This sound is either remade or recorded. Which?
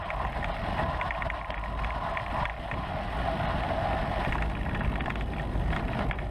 recorded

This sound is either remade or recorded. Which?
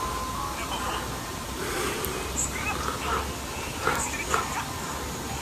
recorded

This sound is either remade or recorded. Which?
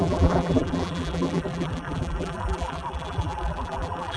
remade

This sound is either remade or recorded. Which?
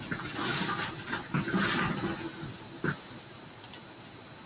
recorded